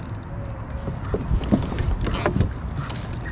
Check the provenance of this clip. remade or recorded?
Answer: recorded